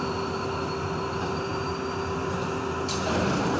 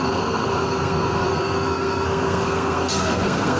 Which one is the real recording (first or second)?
first